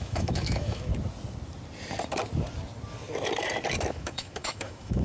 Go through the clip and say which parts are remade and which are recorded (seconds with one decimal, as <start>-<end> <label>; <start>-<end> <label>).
0.0-0.9 remade; 0.9-3.9 recorded; 3.9-5.0 remade